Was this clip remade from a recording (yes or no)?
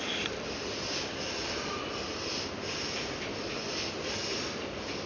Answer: no